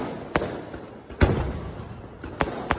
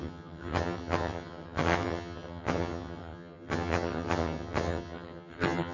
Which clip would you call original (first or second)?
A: first